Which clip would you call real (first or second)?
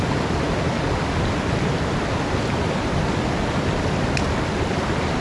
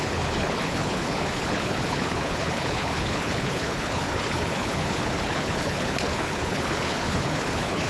first